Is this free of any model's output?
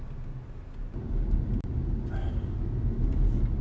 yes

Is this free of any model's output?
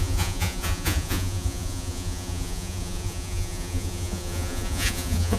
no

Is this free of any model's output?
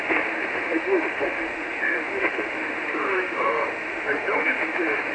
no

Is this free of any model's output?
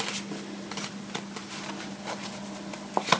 yes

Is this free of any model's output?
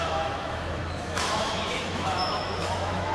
no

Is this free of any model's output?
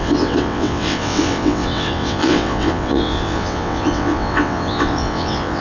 no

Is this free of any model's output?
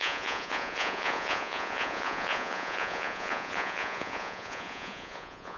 no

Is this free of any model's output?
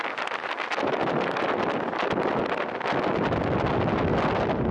yes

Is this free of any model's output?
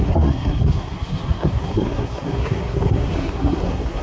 no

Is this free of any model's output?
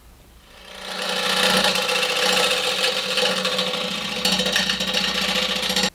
yes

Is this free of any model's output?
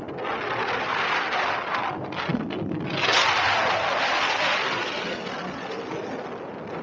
yes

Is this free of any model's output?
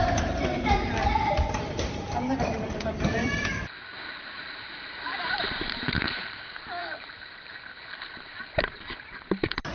no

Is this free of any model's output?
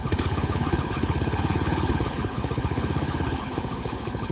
no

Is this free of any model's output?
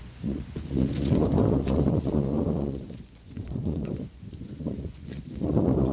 no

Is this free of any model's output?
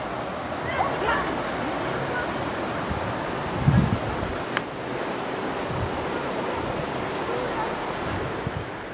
yes